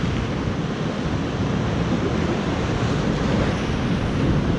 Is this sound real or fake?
real